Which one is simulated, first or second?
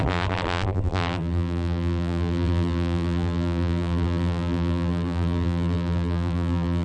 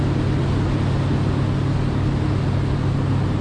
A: first